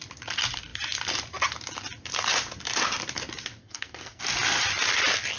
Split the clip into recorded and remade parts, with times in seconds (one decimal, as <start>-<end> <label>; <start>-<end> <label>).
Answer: 0.0-3.6 recorded; 3.6-4.2 remade; 4.2-5.4 recorded